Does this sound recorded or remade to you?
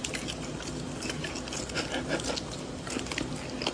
recorded